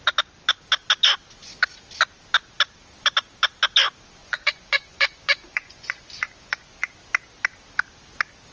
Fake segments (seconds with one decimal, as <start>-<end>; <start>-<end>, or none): 4.2-6.9